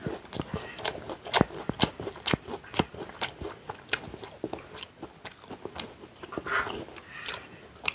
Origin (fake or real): real